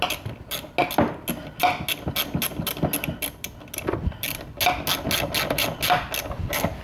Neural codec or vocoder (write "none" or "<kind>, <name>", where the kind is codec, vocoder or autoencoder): none